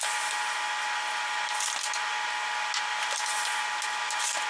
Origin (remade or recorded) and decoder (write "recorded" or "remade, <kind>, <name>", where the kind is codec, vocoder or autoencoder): recorded